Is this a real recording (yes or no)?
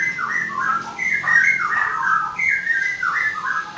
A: yes